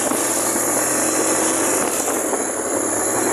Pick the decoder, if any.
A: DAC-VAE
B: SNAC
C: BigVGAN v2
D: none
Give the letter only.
D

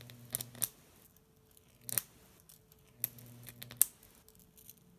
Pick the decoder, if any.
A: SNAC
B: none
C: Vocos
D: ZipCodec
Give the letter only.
B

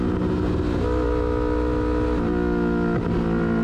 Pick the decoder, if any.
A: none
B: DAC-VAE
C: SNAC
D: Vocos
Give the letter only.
A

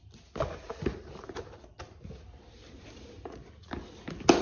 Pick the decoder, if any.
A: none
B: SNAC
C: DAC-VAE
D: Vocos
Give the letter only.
A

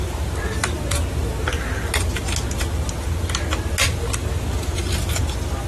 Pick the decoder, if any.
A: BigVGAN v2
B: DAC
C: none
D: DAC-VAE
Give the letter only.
C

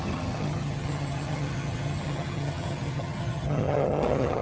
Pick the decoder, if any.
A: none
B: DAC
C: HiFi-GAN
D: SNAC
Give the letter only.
C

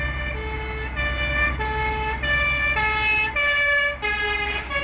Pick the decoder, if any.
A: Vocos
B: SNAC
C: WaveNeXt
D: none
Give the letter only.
D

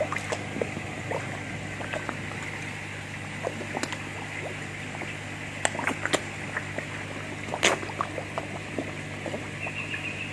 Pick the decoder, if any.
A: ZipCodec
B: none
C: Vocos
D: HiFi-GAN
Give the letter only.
B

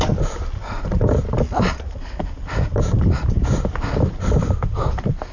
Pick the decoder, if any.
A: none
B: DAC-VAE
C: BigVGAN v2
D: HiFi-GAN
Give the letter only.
C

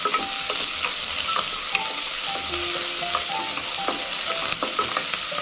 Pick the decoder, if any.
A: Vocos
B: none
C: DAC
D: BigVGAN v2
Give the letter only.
B